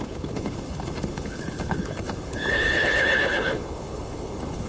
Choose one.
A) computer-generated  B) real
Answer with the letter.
A